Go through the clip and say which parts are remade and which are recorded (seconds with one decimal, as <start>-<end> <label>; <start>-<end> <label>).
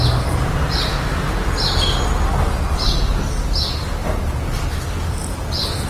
0.0-4.0 recorded; 4.0-5.2 remade; 5.2-5.9 recorded